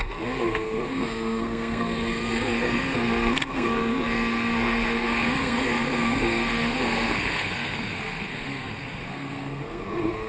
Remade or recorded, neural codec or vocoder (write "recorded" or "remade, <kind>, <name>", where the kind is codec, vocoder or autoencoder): remade, codec, SNAC